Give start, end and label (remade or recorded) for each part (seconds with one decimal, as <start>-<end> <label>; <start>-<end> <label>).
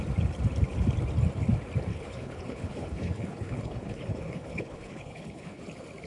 0.0-1.9 recorded; 1.9-5.6 remade; 5.6-6.1 recorded